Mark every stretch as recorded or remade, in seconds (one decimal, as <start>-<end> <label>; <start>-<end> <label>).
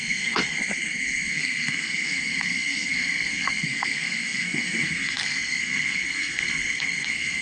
0.0-7.4 remade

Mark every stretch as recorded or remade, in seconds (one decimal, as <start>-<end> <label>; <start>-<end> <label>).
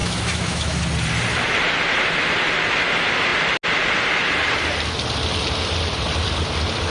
0.0-0.8 remade; 0.8-6.9 recorded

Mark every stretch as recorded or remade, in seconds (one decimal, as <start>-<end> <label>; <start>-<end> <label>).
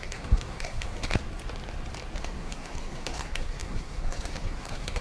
0.0-1.2 remade; 1.2-2.2 recorded; 2.2-5.0 remade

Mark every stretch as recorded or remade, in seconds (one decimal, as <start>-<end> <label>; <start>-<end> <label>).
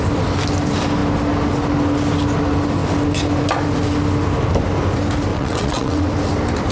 0.0-5.3 recorded; 5.3-6.1 remade; 6.1-6.7 recorded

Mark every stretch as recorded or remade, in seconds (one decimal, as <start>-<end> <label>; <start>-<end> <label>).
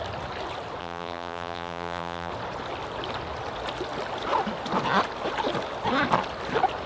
0.0-0.8 recorded; 0.8-2.3 remade; 2.3-6.9 recorded